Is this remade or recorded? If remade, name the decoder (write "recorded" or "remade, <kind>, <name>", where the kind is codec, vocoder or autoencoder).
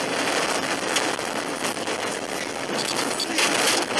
recorded